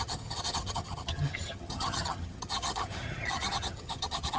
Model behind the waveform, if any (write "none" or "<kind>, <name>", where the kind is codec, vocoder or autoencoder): vocoder, HiFi-GAN